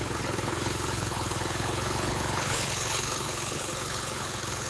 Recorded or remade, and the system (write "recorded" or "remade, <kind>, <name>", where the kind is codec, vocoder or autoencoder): remade, codec, HILCodec